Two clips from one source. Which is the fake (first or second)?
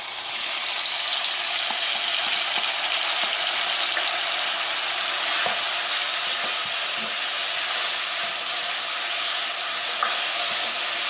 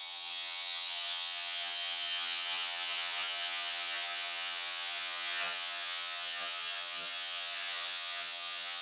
second